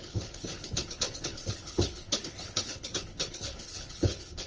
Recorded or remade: remade